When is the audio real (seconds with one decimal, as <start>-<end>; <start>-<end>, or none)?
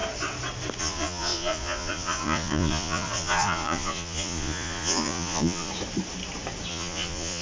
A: 0.0-0.8; 5.7-6.7